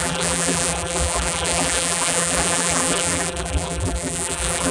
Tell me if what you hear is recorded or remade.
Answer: remade